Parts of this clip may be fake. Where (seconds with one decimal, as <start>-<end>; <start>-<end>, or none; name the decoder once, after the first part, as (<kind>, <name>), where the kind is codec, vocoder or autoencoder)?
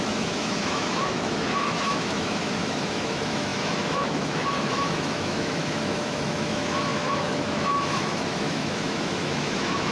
0.0-9.9 (autoencoder, DAC-VAE)